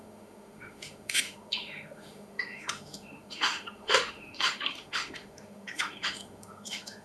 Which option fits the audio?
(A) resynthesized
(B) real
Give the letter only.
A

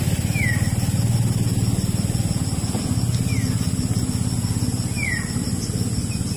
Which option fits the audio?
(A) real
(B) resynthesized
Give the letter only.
A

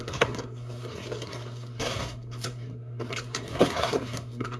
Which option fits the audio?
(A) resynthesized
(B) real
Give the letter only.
A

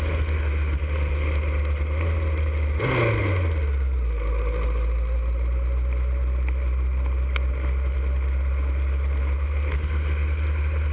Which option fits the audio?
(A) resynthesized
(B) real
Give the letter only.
B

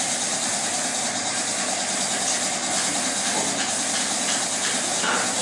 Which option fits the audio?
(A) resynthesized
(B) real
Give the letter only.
B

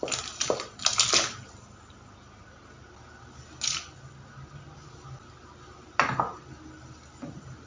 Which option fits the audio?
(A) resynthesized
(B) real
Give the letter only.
B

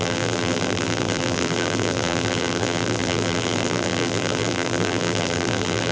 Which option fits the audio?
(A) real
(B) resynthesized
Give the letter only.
B